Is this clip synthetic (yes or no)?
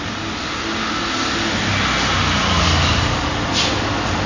no